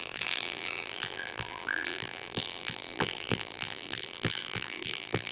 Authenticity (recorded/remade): remade